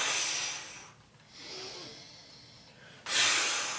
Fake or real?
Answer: real